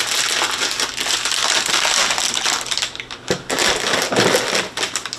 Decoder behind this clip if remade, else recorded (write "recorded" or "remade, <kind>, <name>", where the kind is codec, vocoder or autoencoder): recorded